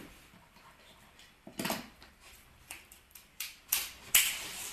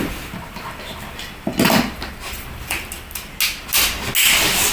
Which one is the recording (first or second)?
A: second